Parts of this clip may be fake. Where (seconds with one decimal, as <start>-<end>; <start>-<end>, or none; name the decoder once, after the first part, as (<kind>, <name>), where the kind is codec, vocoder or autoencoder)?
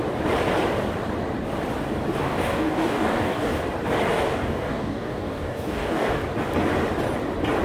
2.2-3.6 (codec, DAC); 4.1-6.2